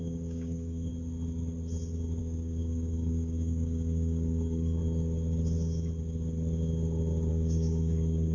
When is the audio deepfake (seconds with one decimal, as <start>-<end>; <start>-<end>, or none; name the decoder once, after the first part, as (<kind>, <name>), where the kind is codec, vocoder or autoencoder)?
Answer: 0.0-0.9 (codec, DAC); 2.2-4.8; 7.3-8.3